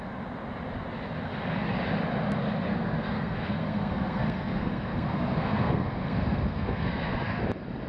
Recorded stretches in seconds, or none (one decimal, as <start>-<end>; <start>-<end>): 0.0-2.7; 7.4-7.9